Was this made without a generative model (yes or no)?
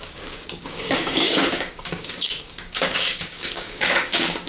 no